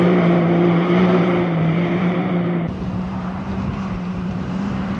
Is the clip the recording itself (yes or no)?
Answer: no